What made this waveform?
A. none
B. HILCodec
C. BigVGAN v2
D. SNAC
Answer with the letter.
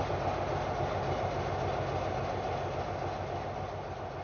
A